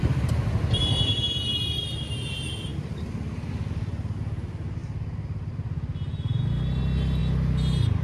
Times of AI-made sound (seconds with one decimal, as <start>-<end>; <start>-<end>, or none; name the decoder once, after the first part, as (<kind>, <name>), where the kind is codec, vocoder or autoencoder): none